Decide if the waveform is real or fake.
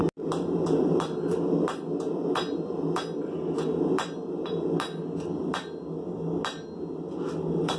real